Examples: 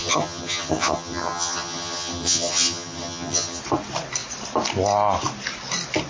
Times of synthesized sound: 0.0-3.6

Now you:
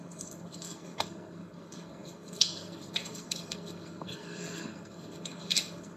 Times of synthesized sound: 0.0-6.0

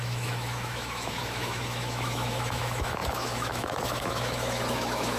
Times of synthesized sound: 0.0-5.2

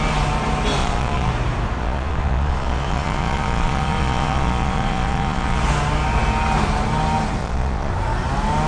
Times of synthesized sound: 0.8-1.3; 1.8-5.6; 7.4-7.9